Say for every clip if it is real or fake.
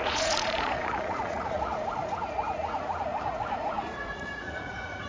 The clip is fake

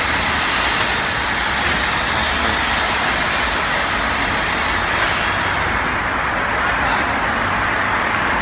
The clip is real